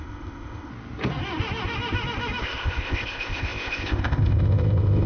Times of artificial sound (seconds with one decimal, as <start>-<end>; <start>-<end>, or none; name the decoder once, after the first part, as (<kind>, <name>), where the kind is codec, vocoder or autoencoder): 0.0-0.7 (codec, ZipCodec); 2.4-5.1